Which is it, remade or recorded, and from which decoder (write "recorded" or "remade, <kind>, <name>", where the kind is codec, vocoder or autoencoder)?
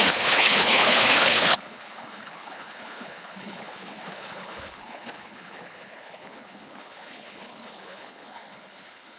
remade, codec, HILCodec